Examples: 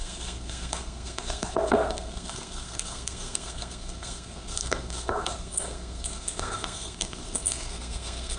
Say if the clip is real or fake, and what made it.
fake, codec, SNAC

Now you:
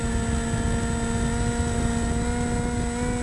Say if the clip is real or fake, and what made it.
real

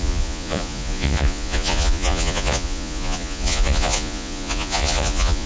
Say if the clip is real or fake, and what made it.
fake, vocoder, Vocos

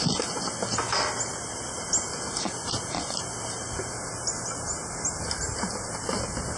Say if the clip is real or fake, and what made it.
real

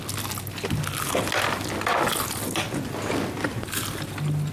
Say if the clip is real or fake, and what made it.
real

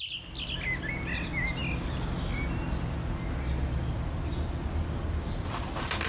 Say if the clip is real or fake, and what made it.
real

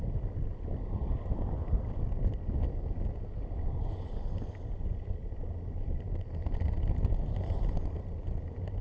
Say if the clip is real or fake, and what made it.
real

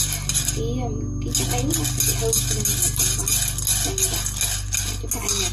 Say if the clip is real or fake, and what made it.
real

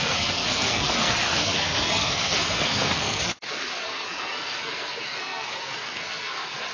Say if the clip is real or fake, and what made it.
fake, codec, SNAC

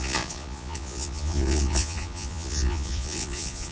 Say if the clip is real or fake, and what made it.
fake, vocoder, Vocos